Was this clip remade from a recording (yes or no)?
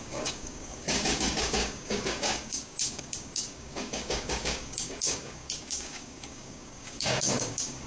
yes